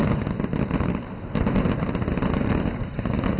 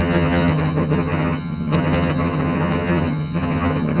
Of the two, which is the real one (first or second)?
first